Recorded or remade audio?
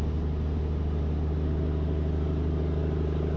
recorded